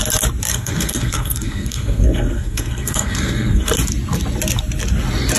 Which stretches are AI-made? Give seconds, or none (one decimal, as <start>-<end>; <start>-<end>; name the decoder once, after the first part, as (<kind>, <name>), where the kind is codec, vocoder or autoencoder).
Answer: 0.5-3.7 (codec, SNAC)